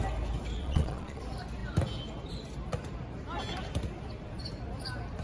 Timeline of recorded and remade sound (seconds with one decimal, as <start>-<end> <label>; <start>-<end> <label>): 0.0-0.6 recorded; 0.6-1.2 remade; 1.2-5.2 recorded